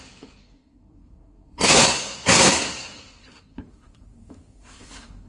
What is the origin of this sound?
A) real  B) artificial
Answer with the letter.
B